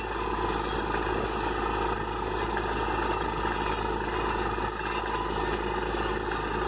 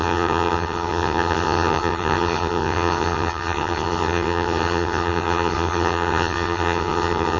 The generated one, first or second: second